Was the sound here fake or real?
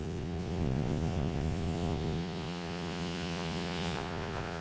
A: fake